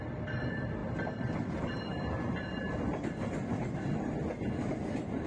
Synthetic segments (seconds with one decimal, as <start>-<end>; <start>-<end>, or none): none